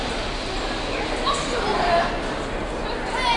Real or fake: real